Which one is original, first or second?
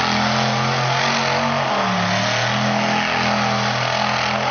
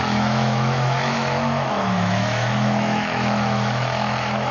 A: first